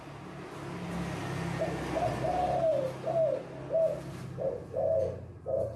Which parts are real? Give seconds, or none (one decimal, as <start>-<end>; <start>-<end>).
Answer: 0.0-5.8